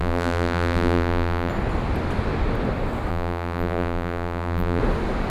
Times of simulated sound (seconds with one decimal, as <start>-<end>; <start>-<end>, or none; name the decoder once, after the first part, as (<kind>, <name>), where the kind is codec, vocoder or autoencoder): 0.0-1.5 (vocoder, BigVGAN v2); 3.1-4.8